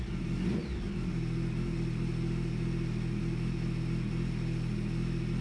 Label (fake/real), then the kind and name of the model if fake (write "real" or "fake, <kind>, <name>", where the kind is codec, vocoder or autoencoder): real